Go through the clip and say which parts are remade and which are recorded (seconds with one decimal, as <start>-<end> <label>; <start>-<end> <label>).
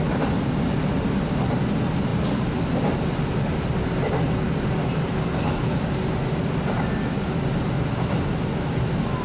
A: 0.0-9.2 recorded